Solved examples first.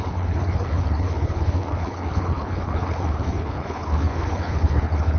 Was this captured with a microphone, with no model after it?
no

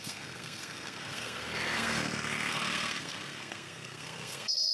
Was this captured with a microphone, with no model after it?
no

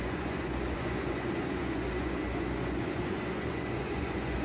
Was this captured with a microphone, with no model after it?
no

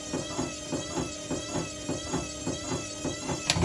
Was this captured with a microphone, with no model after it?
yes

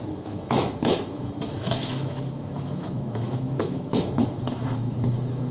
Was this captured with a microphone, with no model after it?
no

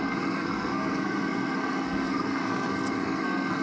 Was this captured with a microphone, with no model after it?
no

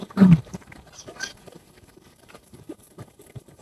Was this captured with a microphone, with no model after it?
no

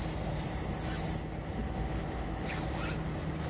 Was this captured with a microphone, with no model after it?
yes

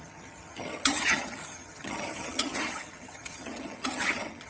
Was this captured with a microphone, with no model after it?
no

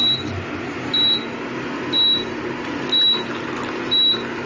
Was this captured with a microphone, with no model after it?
yes